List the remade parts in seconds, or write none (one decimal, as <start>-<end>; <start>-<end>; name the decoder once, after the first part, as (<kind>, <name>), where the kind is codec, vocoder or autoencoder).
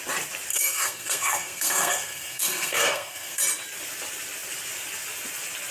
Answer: 0.5-3.4 (codec, SNAC)